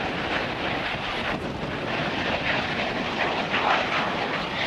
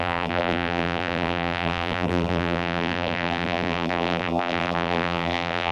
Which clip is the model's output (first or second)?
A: second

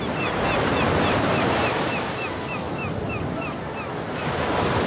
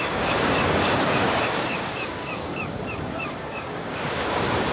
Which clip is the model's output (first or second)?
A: second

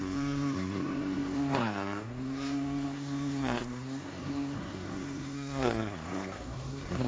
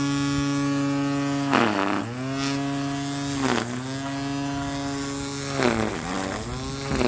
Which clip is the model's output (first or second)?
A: first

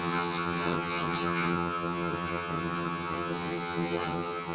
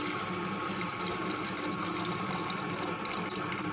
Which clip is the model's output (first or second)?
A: first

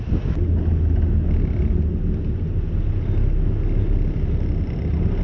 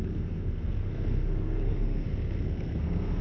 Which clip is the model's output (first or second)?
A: second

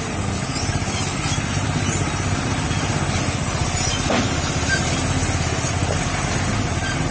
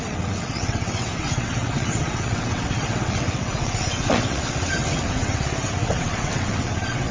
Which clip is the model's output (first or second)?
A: second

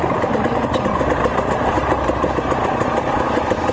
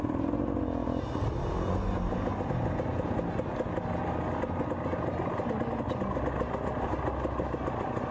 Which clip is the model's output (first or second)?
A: first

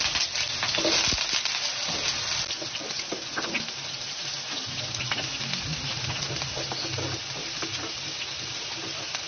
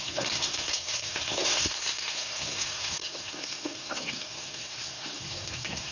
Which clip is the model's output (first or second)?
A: second